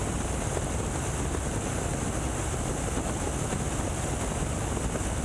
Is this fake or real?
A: real